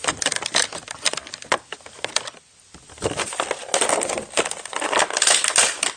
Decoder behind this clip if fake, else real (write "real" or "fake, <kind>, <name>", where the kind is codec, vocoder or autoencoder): real